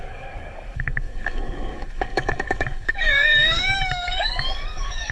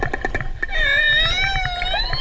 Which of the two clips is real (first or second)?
second